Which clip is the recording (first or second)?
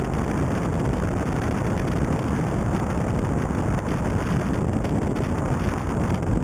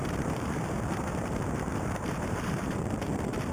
first